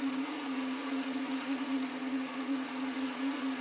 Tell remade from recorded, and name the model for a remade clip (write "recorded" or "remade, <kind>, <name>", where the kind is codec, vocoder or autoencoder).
remade, vocoder, Vocos